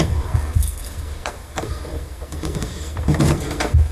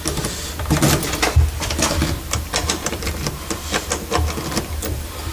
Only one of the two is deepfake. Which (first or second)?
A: first